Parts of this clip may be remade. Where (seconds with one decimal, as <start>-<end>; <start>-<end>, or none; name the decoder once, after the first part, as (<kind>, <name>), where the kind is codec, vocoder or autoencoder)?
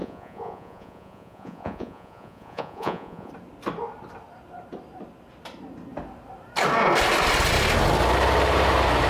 0.0-3.3 (vocoder, Vocos)